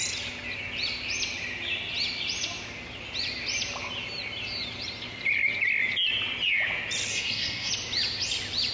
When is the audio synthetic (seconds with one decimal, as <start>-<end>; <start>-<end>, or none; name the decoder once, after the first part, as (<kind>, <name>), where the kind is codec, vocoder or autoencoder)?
7.1-7.7 (codec, SNAC)